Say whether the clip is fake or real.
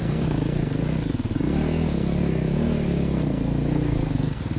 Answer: fake